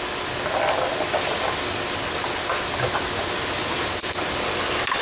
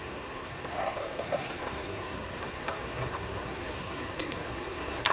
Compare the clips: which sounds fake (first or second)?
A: second